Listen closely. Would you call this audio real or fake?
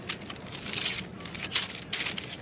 real